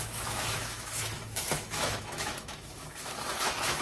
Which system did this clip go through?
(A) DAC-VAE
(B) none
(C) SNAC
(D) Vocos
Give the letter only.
A